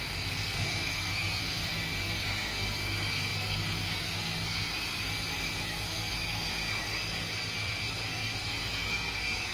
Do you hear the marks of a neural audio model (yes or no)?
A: yes